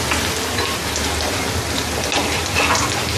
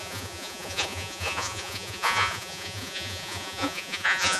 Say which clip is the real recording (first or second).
first